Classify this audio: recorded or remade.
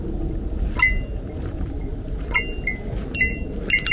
recorded